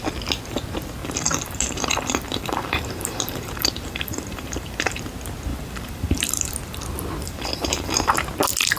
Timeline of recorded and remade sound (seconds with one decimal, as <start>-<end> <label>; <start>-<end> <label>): 0.0-1.0 recorded; 1.0-5.0 remade; 5.0-5.5 recorded; 5.5-6.5 remade; 6.5-7.2 recorded; 7.2-8.1 remade; 8.1-8.8 recorded